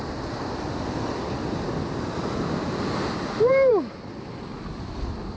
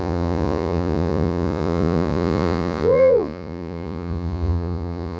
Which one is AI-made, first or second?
second